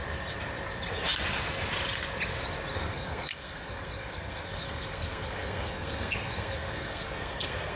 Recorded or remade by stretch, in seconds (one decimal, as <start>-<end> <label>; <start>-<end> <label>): 0.0-2.7 recorded; 2.7-7.8 remade